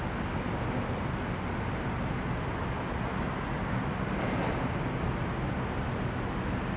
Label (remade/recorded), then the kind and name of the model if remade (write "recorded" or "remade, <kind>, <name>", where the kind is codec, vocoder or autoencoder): recorded